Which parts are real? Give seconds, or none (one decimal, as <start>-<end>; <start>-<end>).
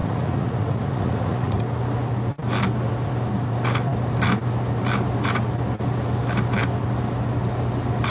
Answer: 1.6-8.1